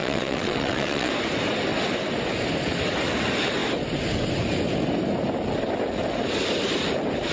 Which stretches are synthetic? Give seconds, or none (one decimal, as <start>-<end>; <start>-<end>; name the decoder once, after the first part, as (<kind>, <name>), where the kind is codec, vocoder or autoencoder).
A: 0.0-1.1 (vocoder, WaveNeXt)